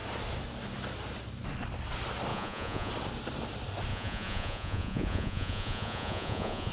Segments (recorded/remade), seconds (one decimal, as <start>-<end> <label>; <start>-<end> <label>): 0.0-2.3 recorded; 2.3-2.9 remade; 2.9-3.9 recorded; 3.9-6.7 remade